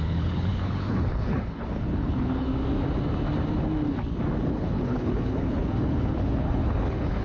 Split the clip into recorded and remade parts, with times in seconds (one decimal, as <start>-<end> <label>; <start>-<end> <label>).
0.0-2.5 remade; 2.5-4.5 recorded; 4.5-7.2 remade